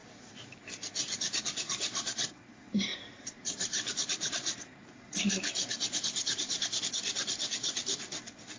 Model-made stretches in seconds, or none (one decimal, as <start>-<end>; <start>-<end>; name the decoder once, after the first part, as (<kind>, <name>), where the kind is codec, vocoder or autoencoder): 2.9-6.8 (vocoder, BigVGAN v2)